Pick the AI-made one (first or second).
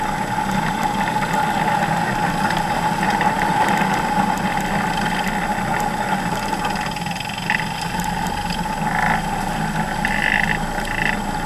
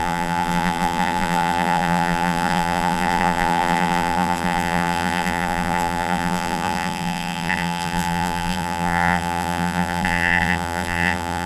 second